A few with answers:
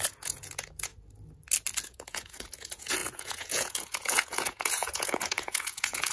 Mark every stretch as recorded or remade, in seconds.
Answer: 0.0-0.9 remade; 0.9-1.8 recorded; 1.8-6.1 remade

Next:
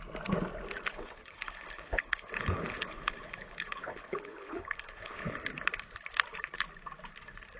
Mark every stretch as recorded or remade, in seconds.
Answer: 0.0-0.9 recorded; 0.9-5.4 remade; 5.4-7.6 recorded

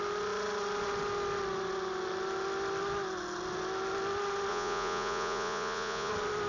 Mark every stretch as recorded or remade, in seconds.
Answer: 0.0-4.5 recorded; 4.5-6.1 remade; 6.1-6.5 recorded

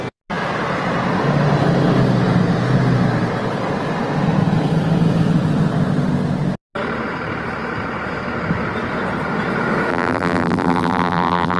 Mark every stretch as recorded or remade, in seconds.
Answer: 0.0-9.9 recorded; 9.9-11.6 remade